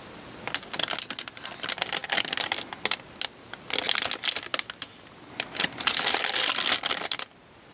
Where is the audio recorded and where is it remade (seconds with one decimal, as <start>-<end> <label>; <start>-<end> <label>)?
0.0-7.7 recorded